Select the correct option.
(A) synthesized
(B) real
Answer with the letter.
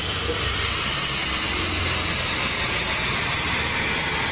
B